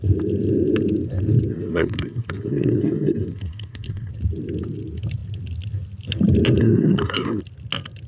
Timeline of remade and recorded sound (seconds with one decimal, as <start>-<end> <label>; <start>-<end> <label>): 0.0-1.5 recorded; 1.5-4.1 remade; 4.1-6.6 recorded; 6.6-7.4 remade; 7.4-8.1 recorded